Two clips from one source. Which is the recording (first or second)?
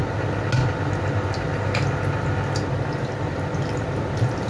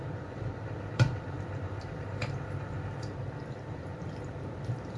first